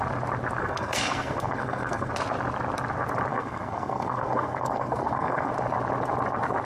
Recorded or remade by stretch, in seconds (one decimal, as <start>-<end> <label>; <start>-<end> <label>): 0.0-0.6 recorded; 0.6-2.1 remade; 2.1-3.3 recorded; 3.3-5.5 remade; 5.5-6.7 recorded